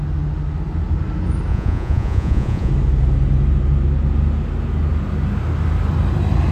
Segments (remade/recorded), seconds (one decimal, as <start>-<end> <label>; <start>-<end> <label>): 0.0-1.5 recorded; 1.5-2.7 remade; 2.7-6.5 recorded